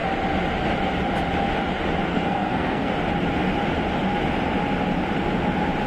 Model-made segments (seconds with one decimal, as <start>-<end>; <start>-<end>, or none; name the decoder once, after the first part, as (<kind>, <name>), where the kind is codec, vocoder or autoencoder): 2.1-2.9 (codec, SNAC)